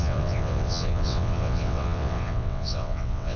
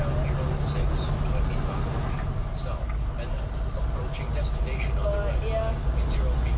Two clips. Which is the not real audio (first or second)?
first